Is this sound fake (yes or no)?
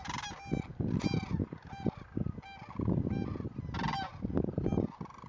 no